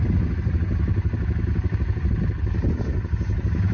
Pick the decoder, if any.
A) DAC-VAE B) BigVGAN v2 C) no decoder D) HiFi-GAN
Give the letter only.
C